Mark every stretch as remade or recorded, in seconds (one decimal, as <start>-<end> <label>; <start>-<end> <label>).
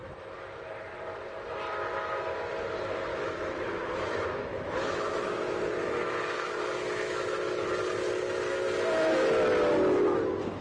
0.0-0.7 remade; 0.7-3.1 recorded; 3.1-7.6 remade; 7.6-10.6 recorded